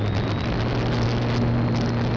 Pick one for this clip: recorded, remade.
recorded